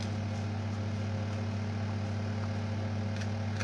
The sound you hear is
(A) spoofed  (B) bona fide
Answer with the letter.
B